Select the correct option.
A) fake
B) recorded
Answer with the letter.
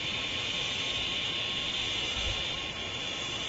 B